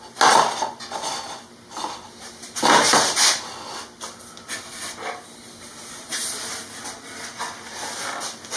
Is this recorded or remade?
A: recorded